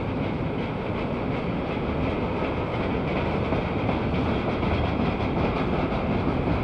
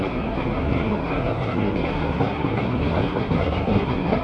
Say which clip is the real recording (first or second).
first